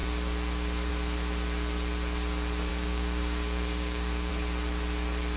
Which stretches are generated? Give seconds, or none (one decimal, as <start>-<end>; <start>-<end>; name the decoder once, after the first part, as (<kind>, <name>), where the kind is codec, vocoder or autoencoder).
2.7-4.3 (codec, DAC)